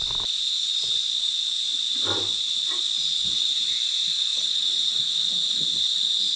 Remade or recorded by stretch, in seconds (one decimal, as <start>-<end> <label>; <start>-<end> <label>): 0.0-4.3 recorded; 4.3-4.8 remade; 4.8-6.4 recorded